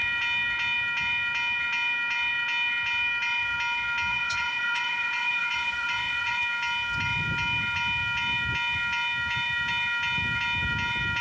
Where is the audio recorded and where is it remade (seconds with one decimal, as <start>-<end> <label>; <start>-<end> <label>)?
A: 0.0-4.1 recorded; 4.1-6.4 remade; 6.4-11.2 recorded